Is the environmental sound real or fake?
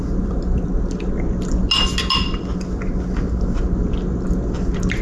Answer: real